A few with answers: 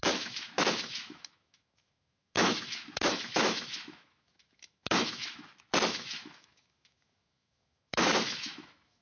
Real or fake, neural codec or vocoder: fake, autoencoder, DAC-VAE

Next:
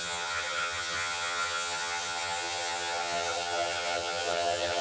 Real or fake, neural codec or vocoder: fake, vocoder, HiFi-GAN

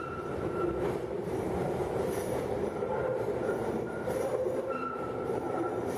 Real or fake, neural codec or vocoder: fake, vocoder, BigVGAN v2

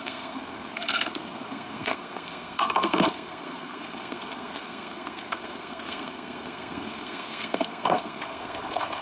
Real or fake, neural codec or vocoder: fake, codec, SNAC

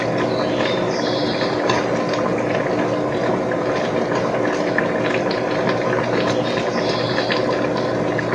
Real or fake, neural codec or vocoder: real